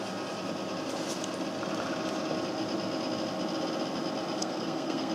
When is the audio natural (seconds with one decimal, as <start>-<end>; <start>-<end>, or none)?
0.0-4.4